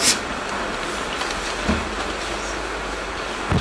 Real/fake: real